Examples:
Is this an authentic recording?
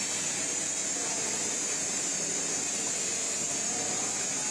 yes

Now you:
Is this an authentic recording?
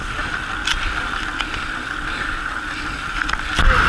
yes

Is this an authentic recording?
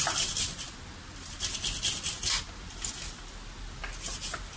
yes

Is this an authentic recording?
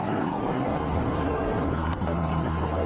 no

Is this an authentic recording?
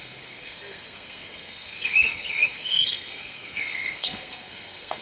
no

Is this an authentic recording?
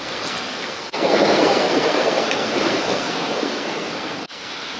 no